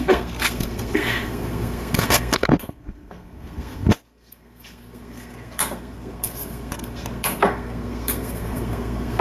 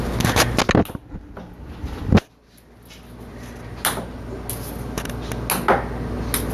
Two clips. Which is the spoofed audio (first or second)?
first